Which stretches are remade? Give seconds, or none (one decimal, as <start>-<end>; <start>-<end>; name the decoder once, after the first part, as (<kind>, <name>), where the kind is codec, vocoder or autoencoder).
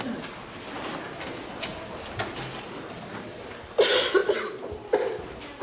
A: none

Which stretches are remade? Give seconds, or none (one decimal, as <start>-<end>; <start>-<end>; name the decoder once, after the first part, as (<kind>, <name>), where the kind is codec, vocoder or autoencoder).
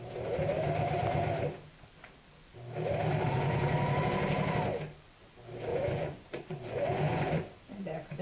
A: 3.3-4.0 (vocoder, Vocos); 5.7-8.2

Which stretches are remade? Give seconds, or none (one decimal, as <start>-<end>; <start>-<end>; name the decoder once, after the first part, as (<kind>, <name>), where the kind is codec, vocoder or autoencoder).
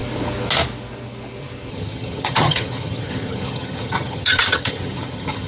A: 1.7-5.5 (vocoder, HiFi-GAN)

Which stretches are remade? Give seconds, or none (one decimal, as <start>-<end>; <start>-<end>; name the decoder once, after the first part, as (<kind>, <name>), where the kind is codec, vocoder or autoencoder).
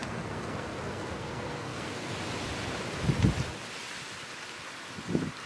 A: 0.0-2.1 (codec, SNAC)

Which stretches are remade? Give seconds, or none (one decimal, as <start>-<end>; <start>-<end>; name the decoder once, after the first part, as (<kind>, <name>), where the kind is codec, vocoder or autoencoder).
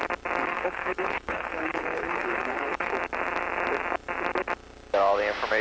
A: 0.4-2.9 (codec, HILCodec)